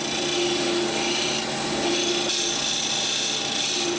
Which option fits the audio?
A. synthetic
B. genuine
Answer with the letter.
B